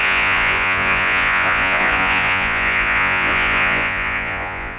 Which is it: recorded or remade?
remade